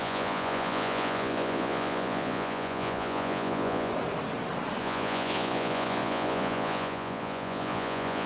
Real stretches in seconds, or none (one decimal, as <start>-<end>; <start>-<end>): 3.9-4.8